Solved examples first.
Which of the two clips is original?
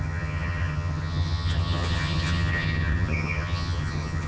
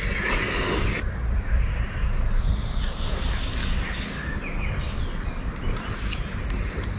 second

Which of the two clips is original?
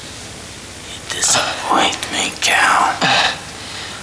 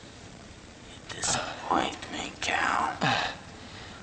first